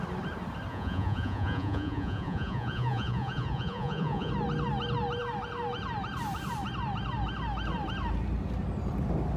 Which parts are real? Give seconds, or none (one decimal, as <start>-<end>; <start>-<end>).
0.0-0.7; 4.3-9.4